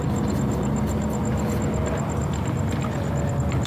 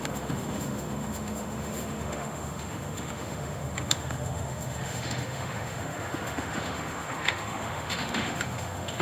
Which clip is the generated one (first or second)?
second